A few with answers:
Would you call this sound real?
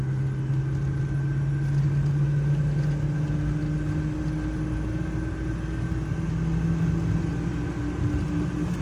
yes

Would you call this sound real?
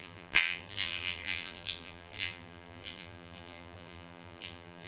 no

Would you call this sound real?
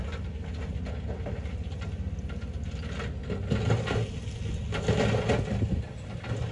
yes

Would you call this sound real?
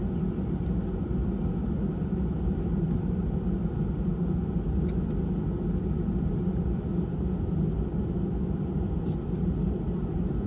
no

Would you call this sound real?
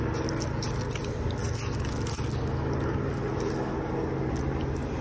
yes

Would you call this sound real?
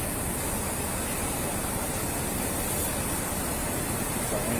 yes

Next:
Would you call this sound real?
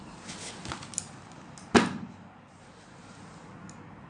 yes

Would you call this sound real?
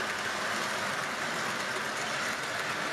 yes